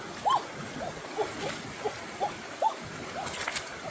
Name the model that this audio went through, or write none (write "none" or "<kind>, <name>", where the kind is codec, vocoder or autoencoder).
none